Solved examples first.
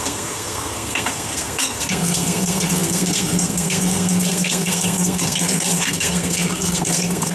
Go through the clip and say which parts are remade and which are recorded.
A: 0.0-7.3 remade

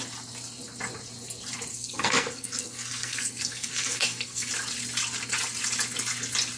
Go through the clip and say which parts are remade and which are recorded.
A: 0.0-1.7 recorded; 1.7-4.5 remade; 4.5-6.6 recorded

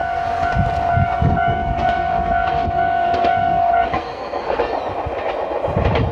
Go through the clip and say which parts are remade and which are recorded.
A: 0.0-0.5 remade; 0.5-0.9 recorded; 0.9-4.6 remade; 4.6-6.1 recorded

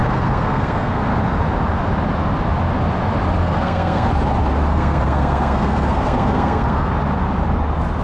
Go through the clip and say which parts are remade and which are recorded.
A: 0.0-1.1 remade; 1.1-3.4 recorded; 3.4-4.1 remade; 4.1-4.7 recorded; 4.7-6.9 remade; 6.9-8.0 recorded

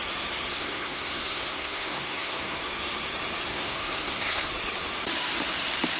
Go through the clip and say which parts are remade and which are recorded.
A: 0.0-0.5 recorded; 0.5-2.6 remade; 2.6-3.5 recorded; 3.5-4.5 remade; 4.5-6.0 recorded

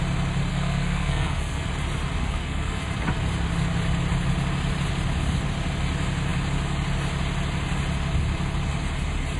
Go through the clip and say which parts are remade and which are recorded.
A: 0.0-0.5 recorded; 0.5-1.7 remade; 1.7-2.2 recorded; 2.2-2.8 remade; 2.8-9.4 recorded

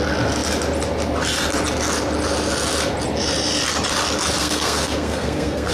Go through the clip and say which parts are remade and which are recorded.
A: 0.0-4.4 recorded; 4.4-5.7 remade

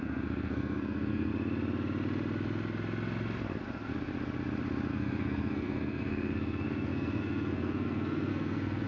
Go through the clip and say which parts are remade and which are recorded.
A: 0.0-1.3 remade; 1.3-4.9 recorded; 4.9-8.9 remade